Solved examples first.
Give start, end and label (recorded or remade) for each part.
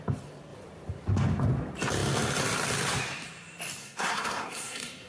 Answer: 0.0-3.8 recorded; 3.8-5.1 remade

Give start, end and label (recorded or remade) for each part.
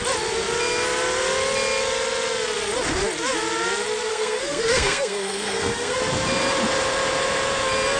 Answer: 0.0-4.1 recorded; 4.1-6.0 remade; 6.0-8.0 recorded